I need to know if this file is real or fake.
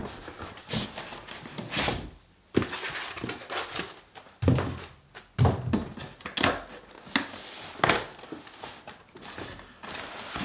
real